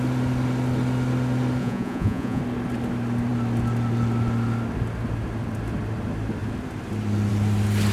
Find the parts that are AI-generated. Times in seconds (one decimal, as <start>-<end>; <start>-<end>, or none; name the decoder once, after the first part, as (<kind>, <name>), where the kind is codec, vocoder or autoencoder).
1.6-2.4 (vocoder, Vocos)